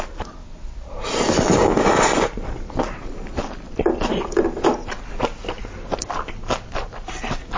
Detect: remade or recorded recorded